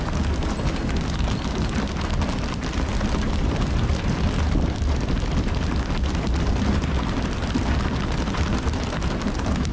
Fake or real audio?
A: real